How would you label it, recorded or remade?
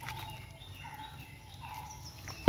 recorded